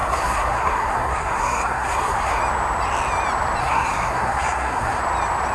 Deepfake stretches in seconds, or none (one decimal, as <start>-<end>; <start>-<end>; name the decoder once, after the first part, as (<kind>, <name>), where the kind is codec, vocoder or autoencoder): 0.0-2.4 (codec, SNAC); 3.6-5.0